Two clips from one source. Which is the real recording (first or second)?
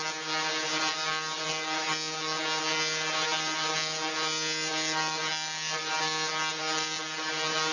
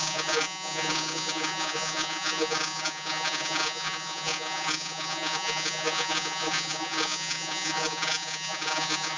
first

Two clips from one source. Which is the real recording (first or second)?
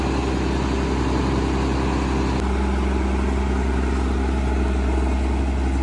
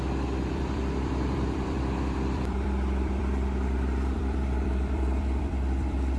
first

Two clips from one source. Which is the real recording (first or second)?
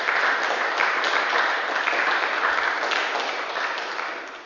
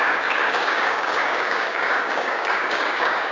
first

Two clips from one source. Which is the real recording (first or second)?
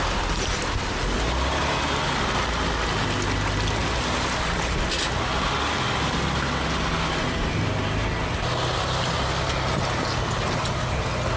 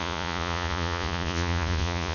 first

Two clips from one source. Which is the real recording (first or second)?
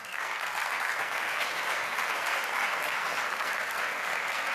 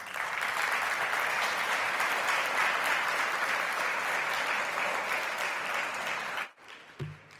second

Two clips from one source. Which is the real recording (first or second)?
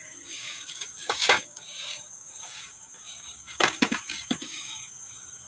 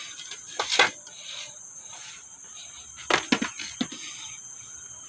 second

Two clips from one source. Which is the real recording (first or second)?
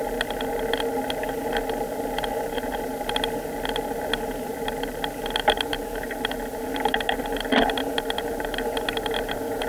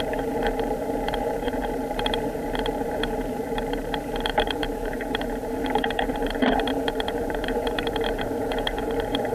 first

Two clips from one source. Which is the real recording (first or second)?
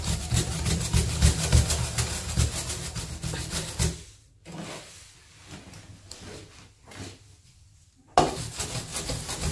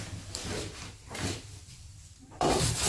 first